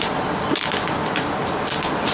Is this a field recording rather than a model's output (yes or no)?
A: yes